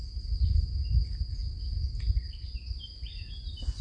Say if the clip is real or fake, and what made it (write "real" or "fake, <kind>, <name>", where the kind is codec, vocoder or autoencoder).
real